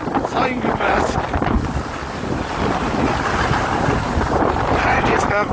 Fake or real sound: fake